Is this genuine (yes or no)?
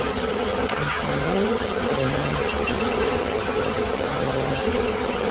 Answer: no